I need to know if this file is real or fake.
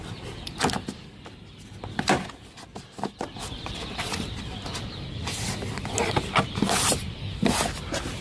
real